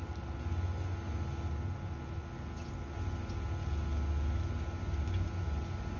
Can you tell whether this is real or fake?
real